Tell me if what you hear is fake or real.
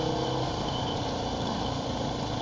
real